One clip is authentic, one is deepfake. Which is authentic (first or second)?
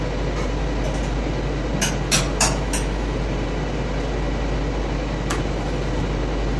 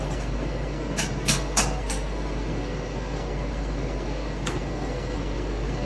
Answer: first